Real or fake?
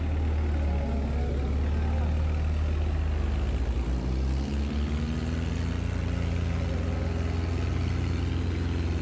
real